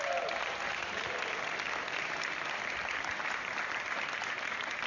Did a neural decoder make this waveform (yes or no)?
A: no